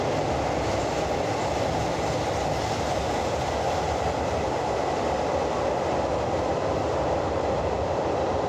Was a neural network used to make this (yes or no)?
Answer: no